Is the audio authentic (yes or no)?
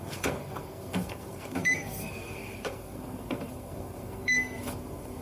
no